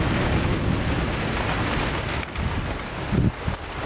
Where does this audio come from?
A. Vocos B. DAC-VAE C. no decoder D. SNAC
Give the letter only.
C